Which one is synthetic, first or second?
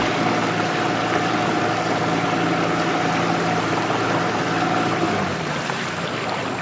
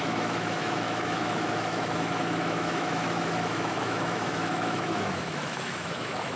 second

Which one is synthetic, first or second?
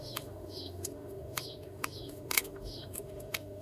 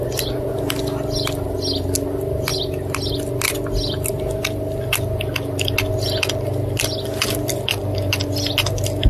first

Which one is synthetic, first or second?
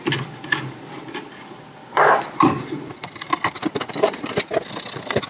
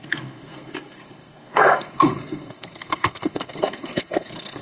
second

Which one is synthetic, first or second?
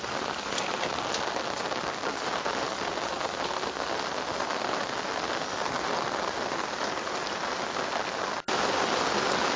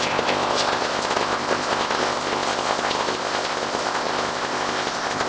second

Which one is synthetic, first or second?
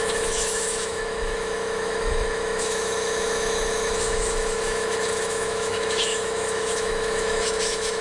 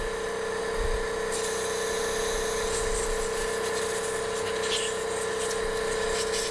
first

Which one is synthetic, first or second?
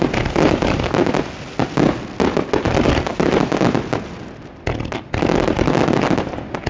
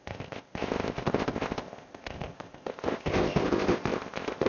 second